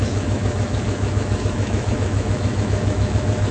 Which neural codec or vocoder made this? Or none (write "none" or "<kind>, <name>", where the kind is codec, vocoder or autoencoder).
autoencoder, DAC-VAE